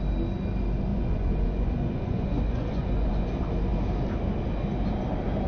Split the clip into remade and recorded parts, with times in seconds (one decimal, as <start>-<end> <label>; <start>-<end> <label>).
0.0-0.9 recorded; 0.9-3.3 remade; 3.3-5.5 recorded